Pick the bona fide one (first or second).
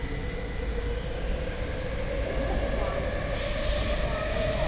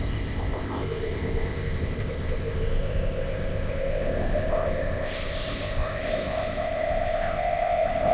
first